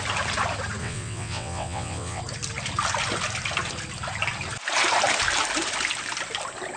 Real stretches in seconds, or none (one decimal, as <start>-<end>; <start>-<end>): 0.0-0.8; 2.2-6.8